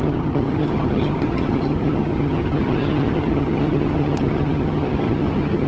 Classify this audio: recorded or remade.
remade